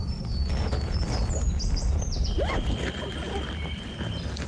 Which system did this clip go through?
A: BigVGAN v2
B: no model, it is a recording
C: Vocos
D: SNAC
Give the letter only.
B